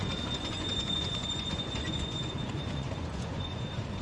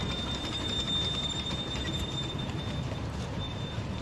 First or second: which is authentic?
second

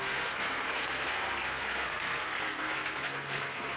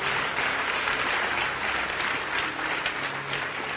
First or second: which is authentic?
second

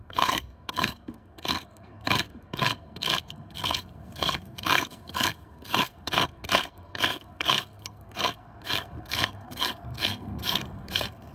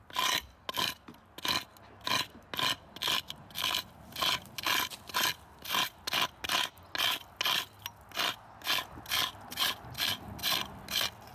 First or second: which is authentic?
second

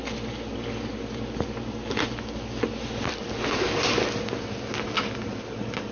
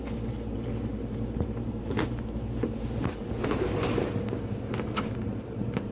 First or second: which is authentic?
first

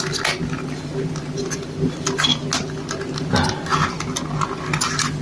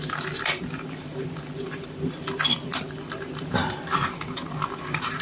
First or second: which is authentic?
first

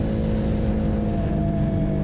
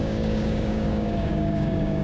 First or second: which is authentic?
first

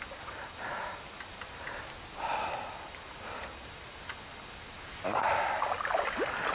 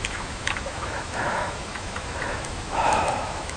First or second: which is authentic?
first